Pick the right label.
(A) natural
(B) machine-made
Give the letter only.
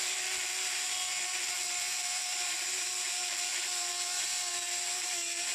B